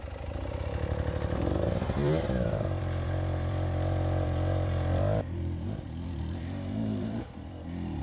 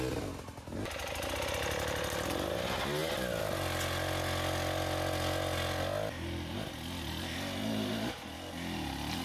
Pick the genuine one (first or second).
second